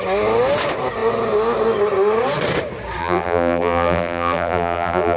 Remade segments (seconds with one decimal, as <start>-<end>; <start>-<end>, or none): 3.0-5.2